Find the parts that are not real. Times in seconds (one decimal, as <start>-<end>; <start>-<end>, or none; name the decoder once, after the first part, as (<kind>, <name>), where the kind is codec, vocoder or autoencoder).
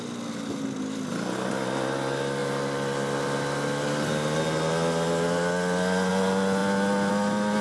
none